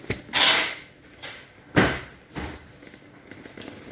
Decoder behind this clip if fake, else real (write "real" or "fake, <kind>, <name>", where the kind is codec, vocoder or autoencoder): real